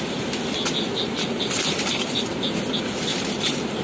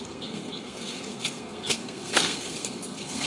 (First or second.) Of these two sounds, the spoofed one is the second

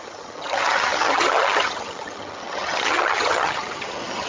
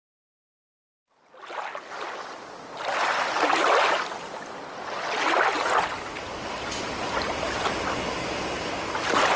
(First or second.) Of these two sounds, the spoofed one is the first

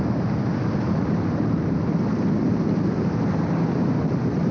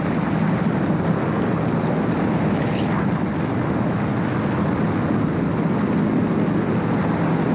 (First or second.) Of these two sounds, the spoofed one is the first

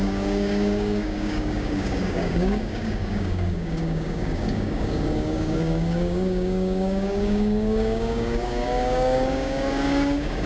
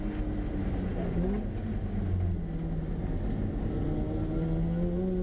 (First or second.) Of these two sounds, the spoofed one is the first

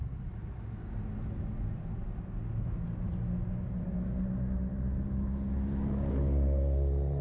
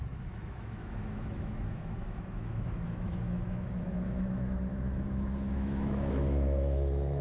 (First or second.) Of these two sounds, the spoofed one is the second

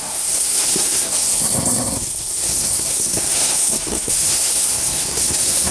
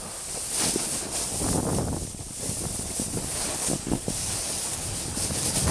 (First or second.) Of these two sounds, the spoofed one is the first